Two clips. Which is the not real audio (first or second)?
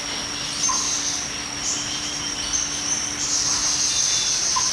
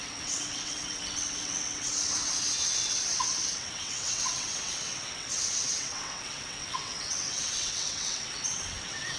second